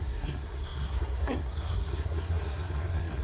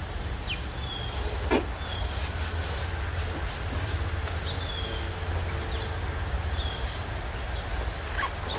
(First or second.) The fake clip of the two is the first